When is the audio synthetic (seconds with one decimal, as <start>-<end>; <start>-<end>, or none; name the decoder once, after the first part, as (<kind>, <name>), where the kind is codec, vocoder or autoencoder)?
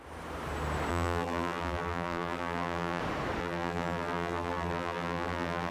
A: 0.9-3.0 (vocoder, BigVGAN v2); 3.4-5.7